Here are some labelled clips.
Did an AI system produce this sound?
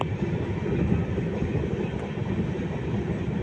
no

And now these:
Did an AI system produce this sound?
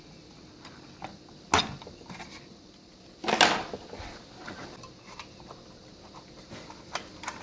no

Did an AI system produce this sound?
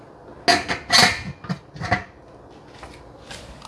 no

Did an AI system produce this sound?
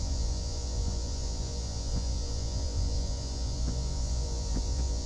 yes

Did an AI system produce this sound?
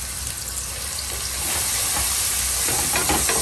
no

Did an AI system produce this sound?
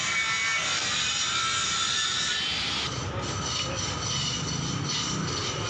no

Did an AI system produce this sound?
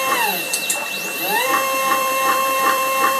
yes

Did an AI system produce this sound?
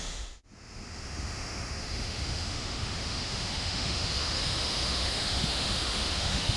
yes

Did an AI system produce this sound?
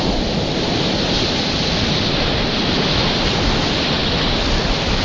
no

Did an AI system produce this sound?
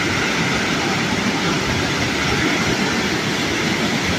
no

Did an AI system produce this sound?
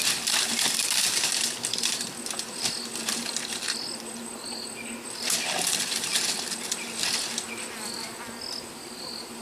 no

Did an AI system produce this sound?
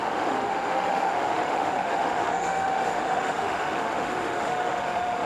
yes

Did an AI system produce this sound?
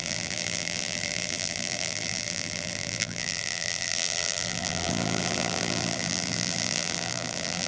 yes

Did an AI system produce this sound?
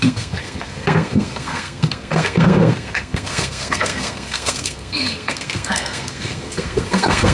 yes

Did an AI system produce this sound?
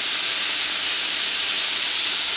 no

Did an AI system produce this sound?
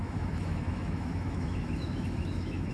yes